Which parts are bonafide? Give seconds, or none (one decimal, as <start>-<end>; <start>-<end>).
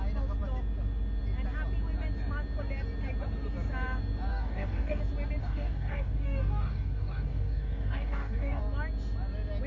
0.0-4.3; 5.0-5.4; 8.6-9.7